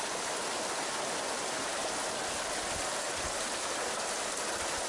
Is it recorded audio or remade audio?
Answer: recorded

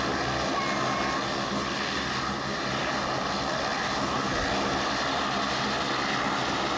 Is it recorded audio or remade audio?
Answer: recorded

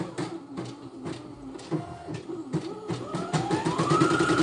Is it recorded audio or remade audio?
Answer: recorded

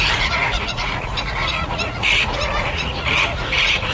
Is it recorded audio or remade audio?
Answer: remade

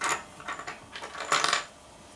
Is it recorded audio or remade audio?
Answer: recorded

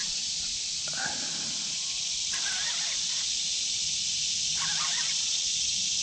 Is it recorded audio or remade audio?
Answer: recorded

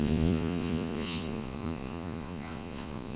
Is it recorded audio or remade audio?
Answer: remade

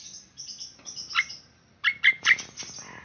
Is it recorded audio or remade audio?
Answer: recorded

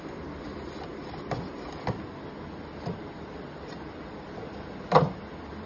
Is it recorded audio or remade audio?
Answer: recorded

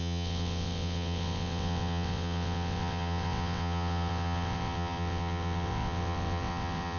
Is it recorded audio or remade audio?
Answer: remade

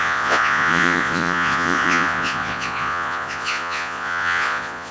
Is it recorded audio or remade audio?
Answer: remade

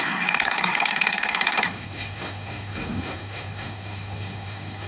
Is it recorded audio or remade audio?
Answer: remade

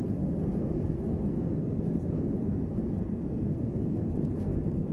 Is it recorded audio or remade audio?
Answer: remade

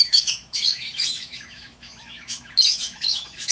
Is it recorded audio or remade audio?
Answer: remade